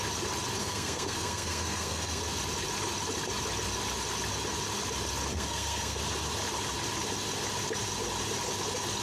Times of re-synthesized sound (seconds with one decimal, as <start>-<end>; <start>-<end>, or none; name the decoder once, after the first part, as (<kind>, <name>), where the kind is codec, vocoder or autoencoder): 0.6-2.2 (codec, SNAC); 5.3-6.0